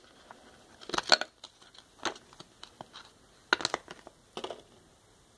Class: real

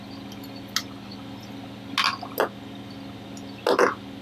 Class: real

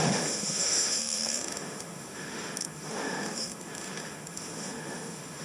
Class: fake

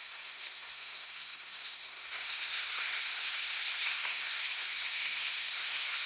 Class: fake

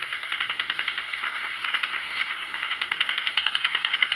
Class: fake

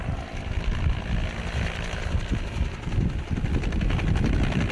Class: real